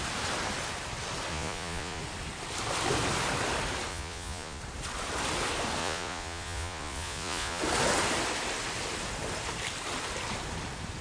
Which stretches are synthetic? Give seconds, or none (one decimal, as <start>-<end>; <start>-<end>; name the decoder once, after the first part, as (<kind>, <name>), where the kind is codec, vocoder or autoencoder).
1.3-2.0 (vocoder, Vocos); 3.9-4.6; 5.8-7.6